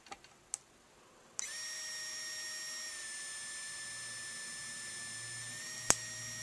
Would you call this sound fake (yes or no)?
no